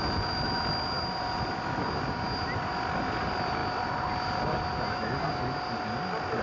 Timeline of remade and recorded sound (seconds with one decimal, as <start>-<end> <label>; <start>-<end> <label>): 0.0-6.4 recorded